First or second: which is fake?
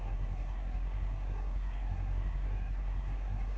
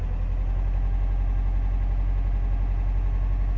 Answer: first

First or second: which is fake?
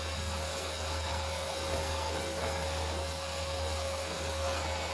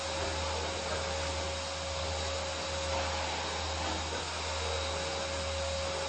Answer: first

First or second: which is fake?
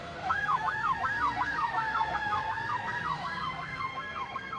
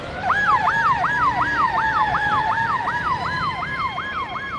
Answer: first